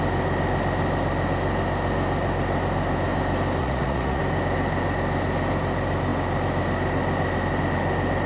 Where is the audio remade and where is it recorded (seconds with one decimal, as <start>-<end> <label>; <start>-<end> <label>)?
0.0-3.6 recorded; 3.6-4.2 remade; 4.2-8.3 recorded